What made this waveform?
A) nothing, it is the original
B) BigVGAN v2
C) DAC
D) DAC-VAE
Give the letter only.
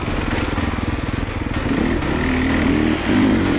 A